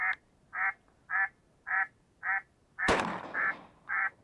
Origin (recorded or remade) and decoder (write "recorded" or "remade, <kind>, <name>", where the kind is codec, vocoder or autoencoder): recorded